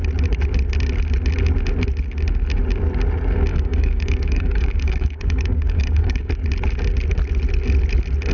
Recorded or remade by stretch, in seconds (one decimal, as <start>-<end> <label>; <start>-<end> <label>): 0.0-3.5 recorded; 3.5-6.3 remade; 6.3-8.3 recorded